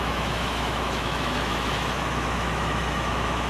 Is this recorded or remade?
remade